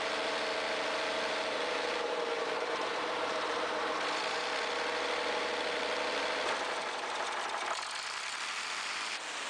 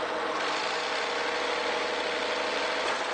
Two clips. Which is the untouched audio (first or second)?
second